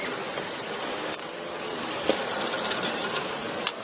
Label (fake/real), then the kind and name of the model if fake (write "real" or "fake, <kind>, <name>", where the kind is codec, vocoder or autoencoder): real